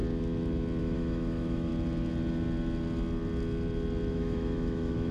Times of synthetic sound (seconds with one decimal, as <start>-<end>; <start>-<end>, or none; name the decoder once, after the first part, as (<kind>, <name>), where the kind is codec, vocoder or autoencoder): 0.8-1.7 (autoencoder, DAC-VAE); 4.1-5.1